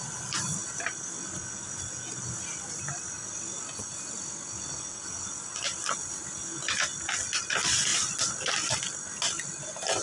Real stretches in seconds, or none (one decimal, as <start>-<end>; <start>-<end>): 0.0-10.0